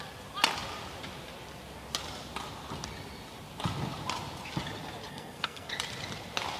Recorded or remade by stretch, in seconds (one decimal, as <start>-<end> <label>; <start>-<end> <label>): 0.0-5.1 recorded; 5.1-5.7 remade; 5.7-6.6 recorded